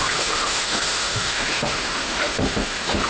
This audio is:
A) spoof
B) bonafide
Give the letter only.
A